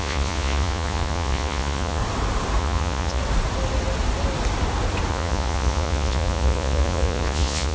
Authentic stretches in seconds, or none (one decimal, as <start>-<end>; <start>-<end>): 2.0-2.6; 3.2-5.1